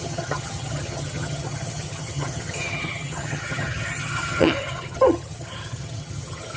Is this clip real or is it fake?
fake